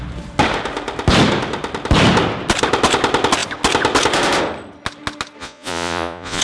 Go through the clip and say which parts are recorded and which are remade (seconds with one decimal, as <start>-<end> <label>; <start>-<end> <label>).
0.0-5.4 recorded; 5.4-6.4 remade